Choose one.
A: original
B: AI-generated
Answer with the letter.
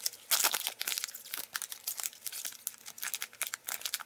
A